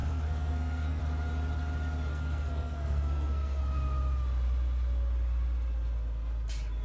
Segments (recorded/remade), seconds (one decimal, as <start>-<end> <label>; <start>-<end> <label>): 0.0-1.0 remade; 1.0-2.1 recorded; 2.1-3.6 remade; 3.6-6.8 recorded